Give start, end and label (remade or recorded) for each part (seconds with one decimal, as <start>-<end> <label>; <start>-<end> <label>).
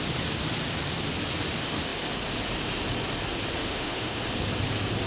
0.0-3.6 recorded; 3.6-4.2 remade; 4.2-5.1 recorded